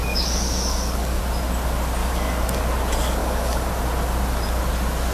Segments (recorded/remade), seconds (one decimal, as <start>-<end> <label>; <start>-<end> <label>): 0.0-1.2 remade; 1.2-2.0 recorded; 2.0-2.6 remade; 2.6-3.2 recorded; 3.2-3.7 remade; 3.7-5.1 recorded